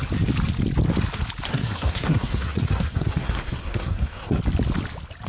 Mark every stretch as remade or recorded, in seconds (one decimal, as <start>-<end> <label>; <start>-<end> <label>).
0.0-1.5 recorded; 1.5-4.4 remade; 4.4-5.3 recorded